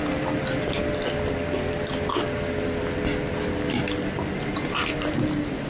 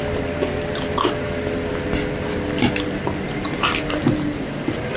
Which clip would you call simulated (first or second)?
second